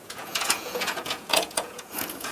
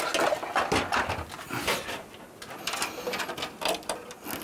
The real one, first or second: second